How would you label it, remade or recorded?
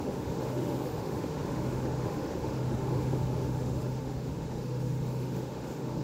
remade